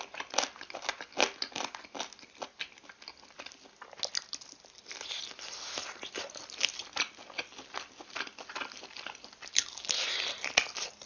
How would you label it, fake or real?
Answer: real